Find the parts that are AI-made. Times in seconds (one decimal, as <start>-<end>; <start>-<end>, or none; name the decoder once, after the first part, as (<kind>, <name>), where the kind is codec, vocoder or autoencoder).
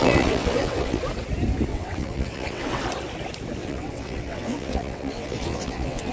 0.0-1.0 (vocoder, WaveNeXt); 1.7-2.8; 3.6-6.1